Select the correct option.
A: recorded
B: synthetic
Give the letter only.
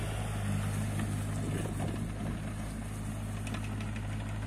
A